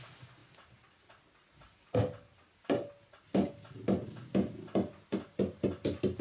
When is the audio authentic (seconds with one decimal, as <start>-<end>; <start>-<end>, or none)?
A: 0.0-6.2